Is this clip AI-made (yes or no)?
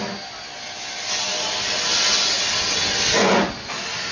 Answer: no